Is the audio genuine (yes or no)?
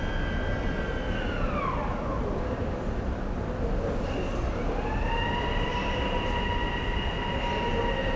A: yes